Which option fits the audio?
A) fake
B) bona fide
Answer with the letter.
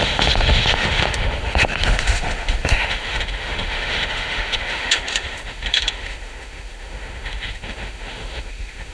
A